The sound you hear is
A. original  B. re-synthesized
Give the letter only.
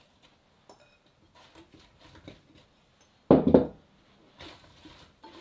A